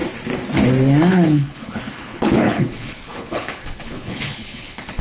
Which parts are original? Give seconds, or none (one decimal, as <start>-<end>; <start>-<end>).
0.0-1.1